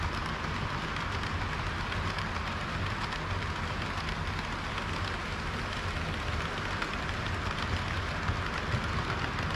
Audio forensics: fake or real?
real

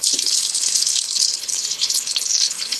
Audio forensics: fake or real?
fake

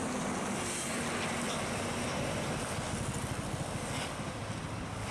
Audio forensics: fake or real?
real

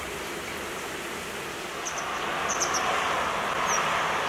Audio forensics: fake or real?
real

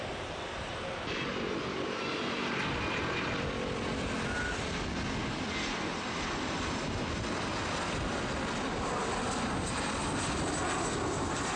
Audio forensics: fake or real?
real